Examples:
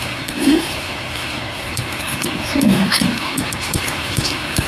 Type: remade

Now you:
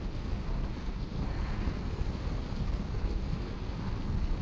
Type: remade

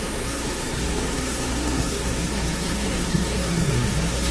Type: remade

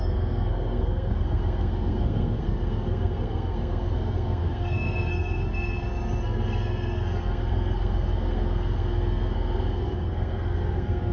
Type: remade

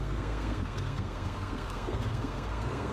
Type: remade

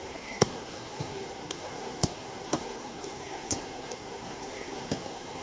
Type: remade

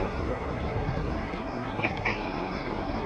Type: remade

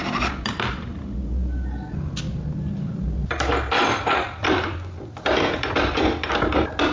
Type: recorded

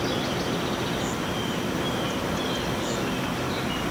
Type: recorded